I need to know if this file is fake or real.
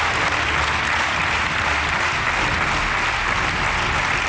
real